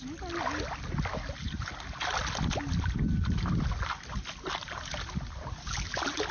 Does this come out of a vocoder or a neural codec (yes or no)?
no